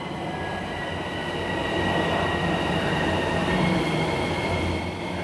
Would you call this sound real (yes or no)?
yes